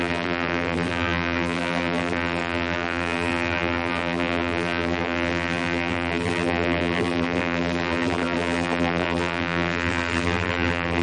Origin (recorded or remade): remade